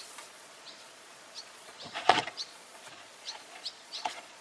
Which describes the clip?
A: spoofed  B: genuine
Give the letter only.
A